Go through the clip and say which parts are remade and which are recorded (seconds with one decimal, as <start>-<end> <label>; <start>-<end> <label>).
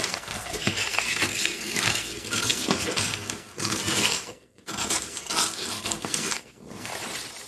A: 0.0-6.9 remade; 6.9-7.5 recorded